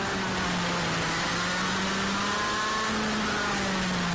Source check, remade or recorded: recorded